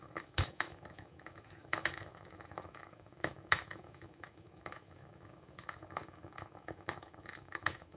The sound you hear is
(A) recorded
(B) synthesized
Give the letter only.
B